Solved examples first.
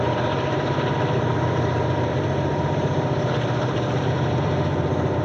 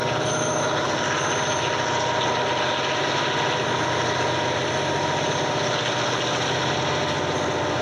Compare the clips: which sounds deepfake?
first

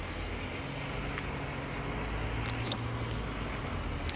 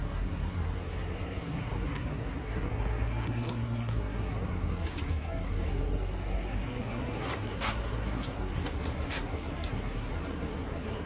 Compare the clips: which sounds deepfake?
second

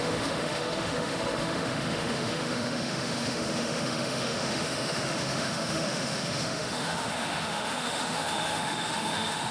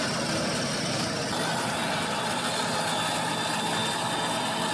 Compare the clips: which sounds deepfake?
first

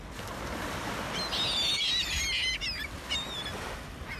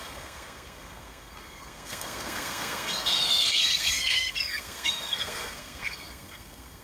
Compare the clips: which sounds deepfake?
second